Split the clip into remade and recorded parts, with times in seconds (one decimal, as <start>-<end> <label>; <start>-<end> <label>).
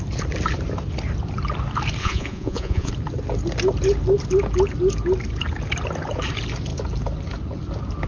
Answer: 0.0-2.0 recorded; 2.0-2.9 remade; 2.9-8.1 recorded